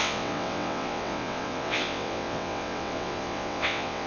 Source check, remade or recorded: remade